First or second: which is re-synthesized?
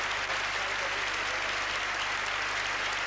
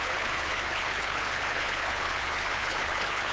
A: second